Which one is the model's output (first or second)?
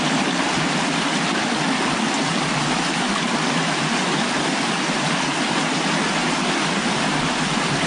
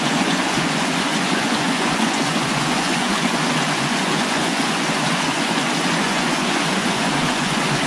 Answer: second